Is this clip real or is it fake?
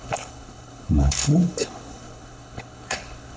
fake